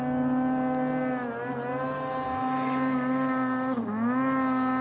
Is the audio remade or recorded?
recorded